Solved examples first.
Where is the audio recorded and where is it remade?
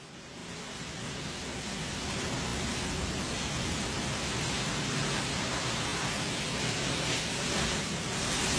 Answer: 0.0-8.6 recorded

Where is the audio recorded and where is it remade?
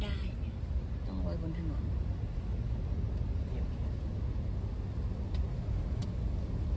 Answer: 0.0-6.8 recorded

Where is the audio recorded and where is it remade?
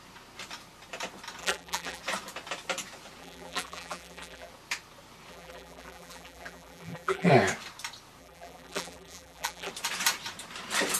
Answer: 0.0-1.4 recorded; 1.4-2.0 remade; 2.0-3.2 recorded; 3.2-4.5 remade; 4.5-5.3 recorded; 5.3-7.3 remade; 7.3-8.2 recorded; 8.2-9.7 remade; 9.7-11.0 recorded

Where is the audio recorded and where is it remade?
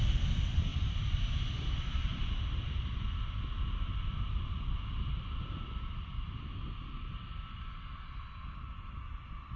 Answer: 0.0-0.7 recorded; 0.7-2.2 remade; 2.2-3.9 recorded; 3.9-6.3 remade; 6.3-9.6 recorded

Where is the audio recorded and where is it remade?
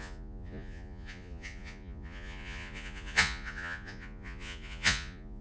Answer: 0.0-5.4 remade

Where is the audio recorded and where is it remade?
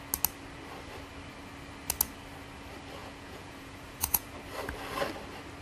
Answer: 0.0-3.0 recorded; 3.0-4.3 remade; 4.3-5.6 recorded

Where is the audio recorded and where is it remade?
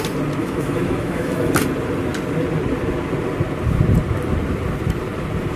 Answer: 0.0-0.4 recorded; 0.4-1.5 remade; 1.5-5.6 recorded